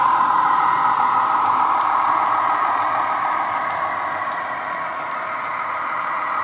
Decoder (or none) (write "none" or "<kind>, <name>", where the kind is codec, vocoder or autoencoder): vocoder, BigVGAN v2